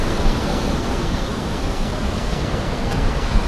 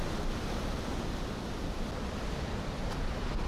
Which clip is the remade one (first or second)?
first